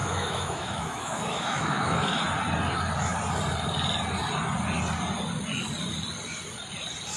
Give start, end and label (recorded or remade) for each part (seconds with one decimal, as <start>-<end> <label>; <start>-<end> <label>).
0.0-2.2 remade; 2.2-7.2 recorded